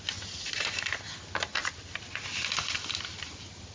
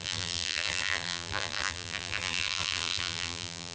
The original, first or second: first